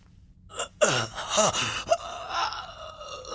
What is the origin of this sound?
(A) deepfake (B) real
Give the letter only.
B